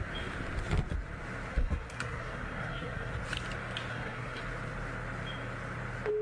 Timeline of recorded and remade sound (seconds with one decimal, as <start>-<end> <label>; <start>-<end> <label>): 0.0-1.5 recorded; 1.5-3.1 remade; 3.1-3.9 recorded; 3.9-4.4 remade; 4.4-6.2 recorded